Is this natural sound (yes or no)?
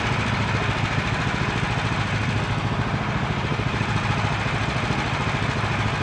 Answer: yes